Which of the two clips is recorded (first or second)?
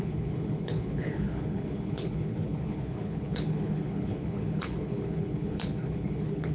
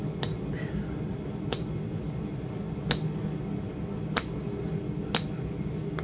second